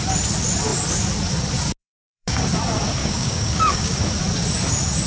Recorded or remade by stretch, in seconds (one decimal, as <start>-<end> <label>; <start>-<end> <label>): 0.0-1.8 recorded; 1.8-2.4 remade; 2.4-3.0 recorded; 3.0-4.0 remade; 4.0-5.1 recorded

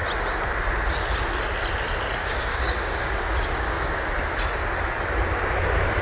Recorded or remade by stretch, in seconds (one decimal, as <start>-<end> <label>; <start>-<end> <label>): 0.0-2.2 recorded; 2.2-4.1 remade; 4.1-6.0 recorded